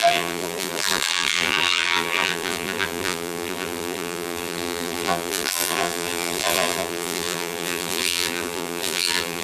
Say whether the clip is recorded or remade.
remade